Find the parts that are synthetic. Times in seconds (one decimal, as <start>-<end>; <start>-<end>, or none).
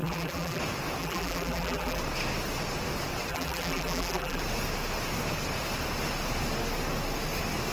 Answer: 0.0-0.6; 1.0-2.0; 3.3-4.4